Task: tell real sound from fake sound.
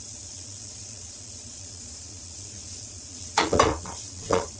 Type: fake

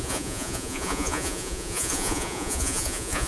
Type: fake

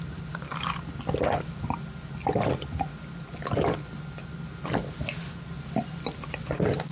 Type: real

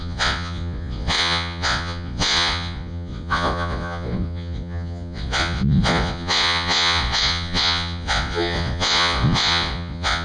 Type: fake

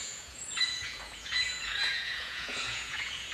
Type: fake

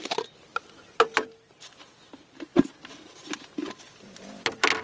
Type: real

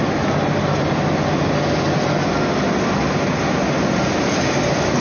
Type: real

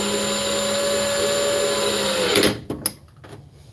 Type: real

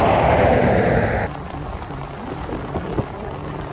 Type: real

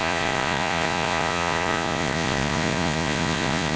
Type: fake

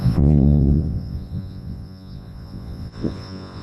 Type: fake